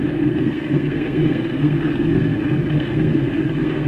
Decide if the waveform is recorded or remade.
remade